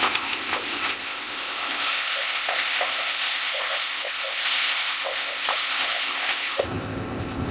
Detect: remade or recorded remade